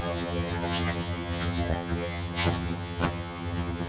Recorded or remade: remade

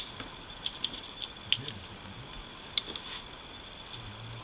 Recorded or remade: recorded